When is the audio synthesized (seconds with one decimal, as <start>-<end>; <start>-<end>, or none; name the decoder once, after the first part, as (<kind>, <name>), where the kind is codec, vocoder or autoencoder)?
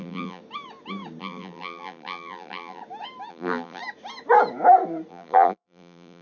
0.0-0.4 (vocoder, BigVGAN v2); 1.2-2.8; 3.3-3.8; 5.1-6.2